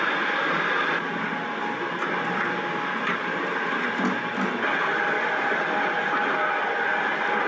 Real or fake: real